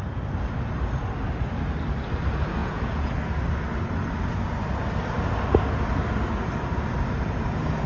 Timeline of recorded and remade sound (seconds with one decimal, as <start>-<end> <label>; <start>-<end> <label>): 0.0-2.6 recorded; 2.6-3.1 remade; 3.1-7.9 recorded